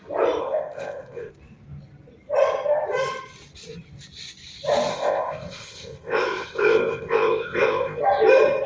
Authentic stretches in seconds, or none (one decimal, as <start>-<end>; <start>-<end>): 0.0-0.4; 1.3-4.9; 8.0-8.7

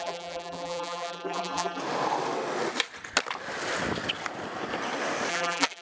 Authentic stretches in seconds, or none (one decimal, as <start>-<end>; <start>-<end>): 1.8-5.3

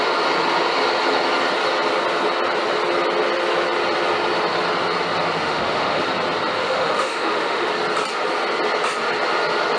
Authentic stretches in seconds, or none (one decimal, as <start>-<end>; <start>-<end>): 0.0-5.4; 6.0-6.6; 7.7-9.8

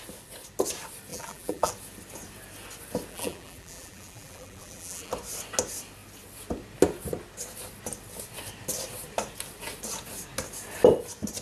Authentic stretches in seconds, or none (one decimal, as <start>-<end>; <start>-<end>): 0.0-1.1; 1.7-3.1; 5.1-11.4

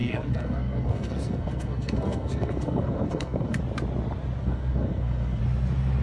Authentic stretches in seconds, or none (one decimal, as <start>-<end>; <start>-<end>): 3.6-4.4; 5.4-6.0